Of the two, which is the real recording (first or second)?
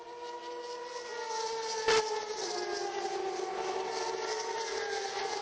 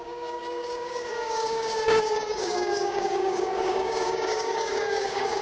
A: first